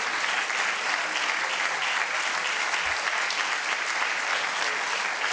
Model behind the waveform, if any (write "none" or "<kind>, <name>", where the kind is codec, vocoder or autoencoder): none